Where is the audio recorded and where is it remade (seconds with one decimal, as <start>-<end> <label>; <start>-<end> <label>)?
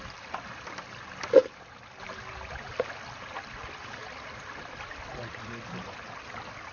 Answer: 0.0-6.7 recorded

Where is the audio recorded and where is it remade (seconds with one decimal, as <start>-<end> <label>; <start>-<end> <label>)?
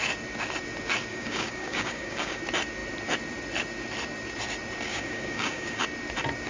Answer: 0.0-1.1 recorded; 1.1-2.4 remade; 2.4-4.9 recorded; 4.9-5.8 remade; 5.8-6.5 recorded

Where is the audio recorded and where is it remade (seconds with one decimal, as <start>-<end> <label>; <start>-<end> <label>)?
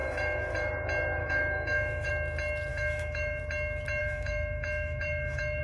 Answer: 0.0-0.7 remade; 0.7-1.2 recorded; 1.2-2.1 remade; 2.1-2.7 recorded; 2.7-3.4 remade; 3.4-4.0 recorded; 4.0-5.6 remade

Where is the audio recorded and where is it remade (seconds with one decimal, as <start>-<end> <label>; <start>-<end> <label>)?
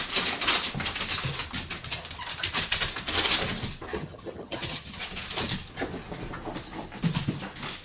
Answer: 0.0-3.9 recorded; 3.9-5.0 remade; 5.0-7.8 recorded